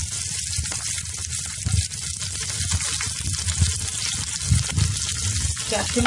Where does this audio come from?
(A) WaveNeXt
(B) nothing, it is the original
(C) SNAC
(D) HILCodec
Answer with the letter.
B